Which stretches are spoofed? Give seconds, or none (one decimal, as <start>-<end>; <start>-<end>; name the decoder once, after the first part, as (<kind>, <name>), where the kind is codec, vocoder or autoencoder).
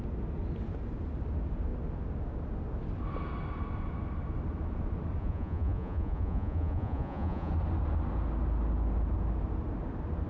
5.2-7.5 (vocoder, Vocos)